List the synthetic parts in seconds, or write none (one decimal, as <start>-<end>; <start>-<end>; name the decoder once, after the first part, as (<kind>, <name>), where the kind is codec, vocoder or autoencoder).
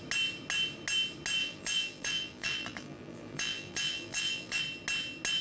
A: 1.4-4.6 (vocoder, BigVGAN v2)